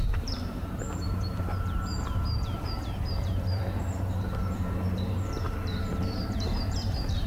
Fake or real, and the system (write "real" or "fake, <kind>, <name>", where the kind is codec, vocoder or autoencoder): fake, vocoder, BigVGAN v2